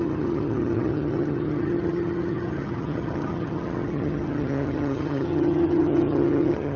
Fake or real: fake